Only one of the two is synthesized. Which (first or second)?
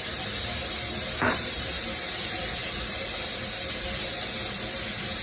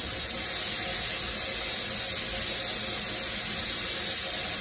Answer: first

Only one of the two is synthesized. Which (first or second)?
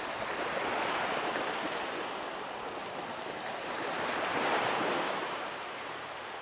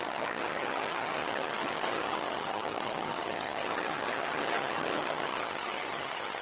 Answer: second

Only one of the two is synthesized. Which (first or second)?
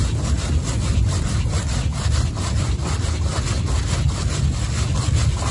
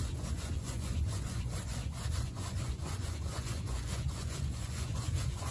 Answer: second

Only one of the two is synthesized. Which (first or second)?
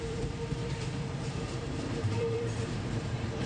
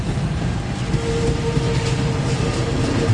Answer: first